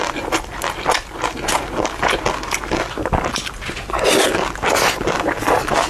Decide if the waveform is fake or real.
real